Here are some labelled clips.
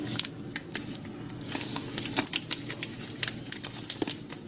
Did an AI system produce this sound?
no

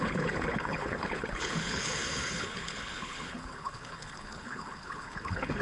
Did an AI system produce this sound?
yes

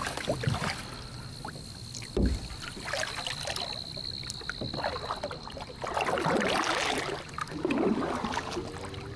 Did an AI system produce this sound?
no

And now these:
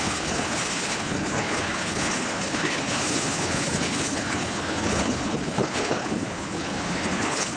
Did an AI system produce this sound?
yes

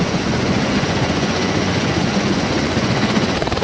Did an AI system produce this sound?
yes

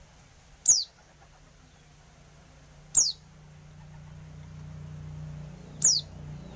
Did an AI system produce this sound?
no